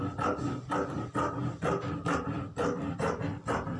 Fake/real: fake